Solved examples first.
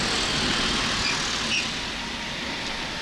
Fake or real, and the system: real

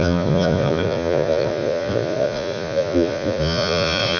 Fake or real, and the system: fake, vocoder, Vocos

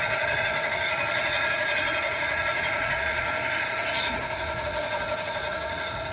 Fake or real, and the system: fake, vocoder, Vocos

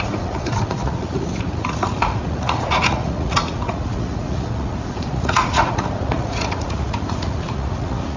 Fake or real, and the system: fake, vocoder, Vocos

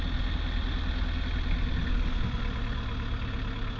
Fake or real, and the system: real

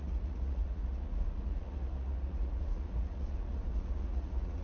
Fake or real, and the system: fake, vocoder, Vocos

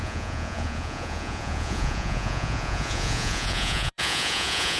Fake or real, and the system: fake, vocoder, Vocos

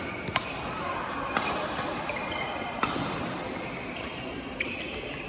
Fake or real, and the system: real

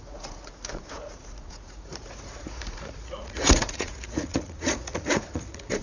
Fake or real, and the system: fake, vocoder, Vocos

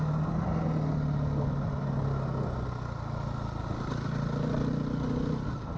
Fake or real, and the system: real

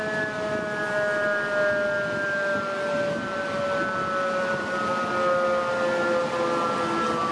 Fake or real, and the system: real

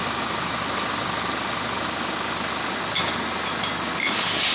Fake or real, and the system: real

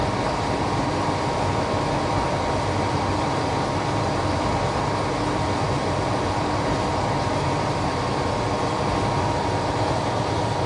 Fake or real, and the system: real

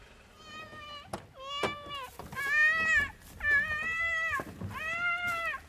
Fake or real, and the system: real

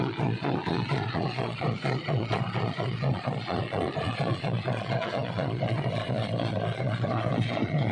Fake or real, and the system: fake, vocoder, Vocos